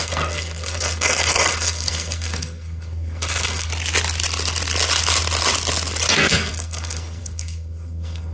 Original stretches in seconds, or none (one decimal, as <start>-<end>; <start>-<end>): 3.7-6.1